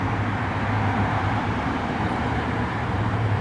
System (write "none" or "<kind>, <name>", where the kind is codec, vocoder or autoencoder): vocoder, BigVGAN v2